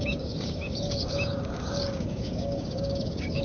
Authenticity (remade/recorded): remade